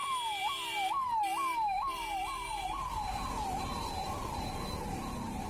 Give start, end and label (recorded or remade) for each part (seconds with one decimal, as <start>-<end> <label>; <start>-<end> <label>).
0.0-3.3 recorded; 3.3-3.7 remade; 3.7-4.3 recorded; 4.3-5.5 remade

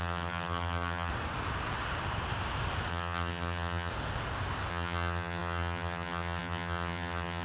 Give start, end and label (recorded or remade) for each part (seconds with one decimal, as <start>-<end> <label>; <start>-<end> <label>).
0.0-1.1 remade; 1.1-2.9 recorded; 2.9-3.9 remade; 3.9-4.7 recorded; 4.7-7.4 remade

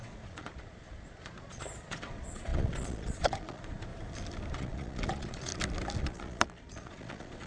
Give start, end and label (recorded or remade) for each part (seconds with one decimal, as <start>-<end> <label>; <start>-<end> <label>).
0.0-3.9 remade; 3.9-4.5 recorded; 4.5-5.5 remade; 5.5-6.0 recorded; 6.0-7.5 remade

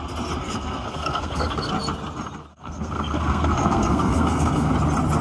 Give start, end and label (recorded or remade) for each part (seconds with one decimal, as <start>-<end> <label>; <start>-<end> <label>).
0.0-0.4 recorded; 0.4-1.7 remade; 1.7-2.5 recorded; 2.5-4.7 remade; 4.7-5.2 recorded

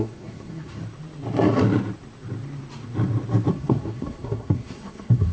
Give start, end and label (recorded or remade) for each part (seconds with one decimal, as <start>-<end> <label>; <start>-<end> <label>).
0.0-0.8 remade; 0.8-3.5 recorded; 3.5-5.3 remade

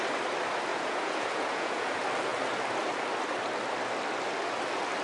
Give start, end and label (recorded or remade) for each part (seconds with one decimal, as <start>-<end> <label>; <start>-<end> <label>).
0.0-0.7 recorded; 0.7-1.9 remade; 1.9-5.0 recorded